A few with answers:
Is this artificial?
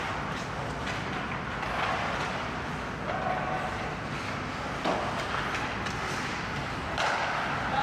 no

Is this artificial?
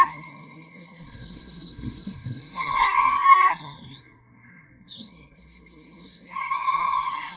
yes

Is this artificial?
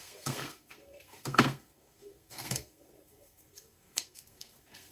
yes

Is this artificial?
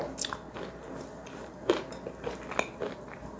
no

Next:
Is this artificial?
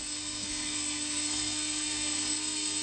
yes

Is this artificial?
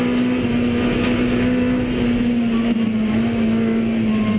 no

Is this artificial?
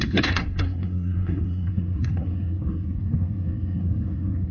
yes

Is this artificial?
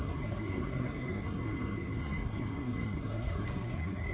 yes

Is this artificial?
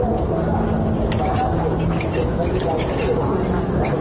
no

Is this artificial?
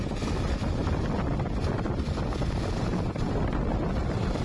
no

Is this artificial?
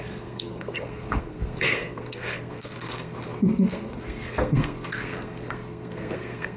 yes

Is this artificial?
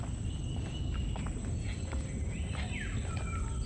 no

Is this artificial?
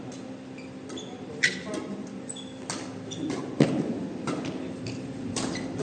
no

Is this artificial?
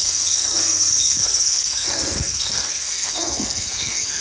yes